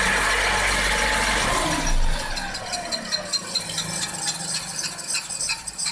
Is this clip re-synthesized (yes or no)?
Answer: no